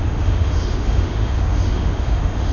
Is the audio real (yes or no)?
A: no